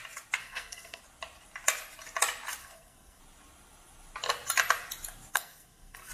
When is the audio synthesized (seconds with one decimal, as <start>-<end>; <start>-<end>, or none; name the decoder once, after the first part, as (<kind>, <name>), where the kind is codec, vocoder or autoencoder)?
0.4-1.0 (codec, SNAC); 2.6-3.2; 5.3-6.1